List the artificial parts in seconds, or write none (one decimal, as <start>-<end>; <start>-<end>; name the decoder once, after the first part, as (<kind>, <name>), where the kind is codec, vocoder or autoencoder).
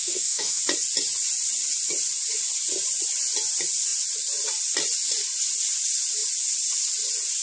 0.0-0.6 (autoencoder, DAC-VAE)